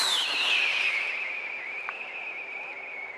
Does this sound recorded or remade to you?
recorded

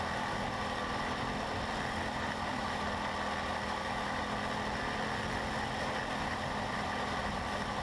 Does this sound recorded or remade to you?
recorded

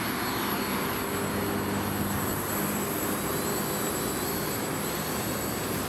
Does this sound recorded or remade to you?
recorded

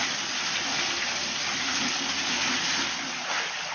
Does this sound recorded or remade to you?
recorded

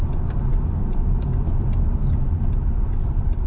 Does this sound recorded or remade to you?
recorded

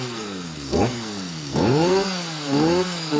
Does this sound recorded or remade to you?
remade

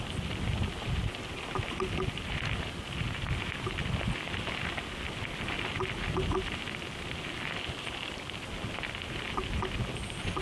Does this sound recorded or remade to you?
recorded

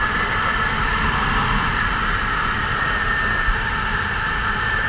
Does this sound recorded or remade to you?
recorded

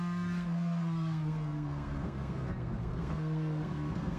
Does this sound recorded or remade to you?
remade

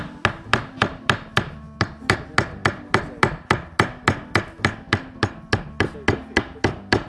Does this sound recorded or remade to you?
recorded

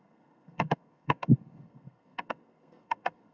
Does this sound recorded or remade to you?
remade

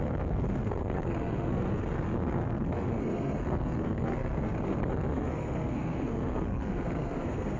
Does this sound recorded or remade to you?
remade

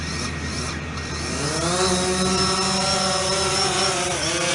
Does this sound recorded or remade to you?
recorded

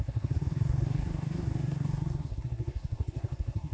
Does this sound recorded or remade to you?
remade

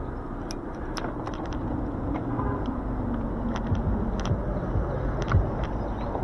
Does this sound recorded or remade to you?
recorded